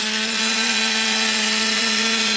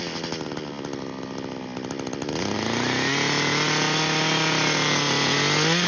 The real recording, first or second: second